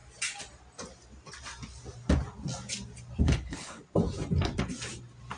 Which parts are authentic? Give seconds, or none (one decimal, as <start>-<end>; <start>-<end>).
0.0-3.2; 3.8-5.4

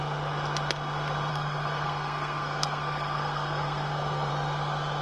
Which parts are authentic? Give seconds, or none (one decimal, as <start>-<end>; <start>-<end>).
0.0-1.3; 4.3-5.0